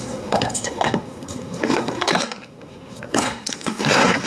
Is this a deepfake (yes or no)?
yes